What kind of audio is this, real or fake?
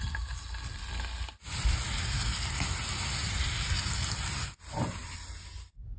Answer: real